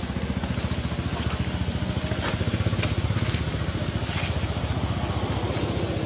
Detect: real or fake real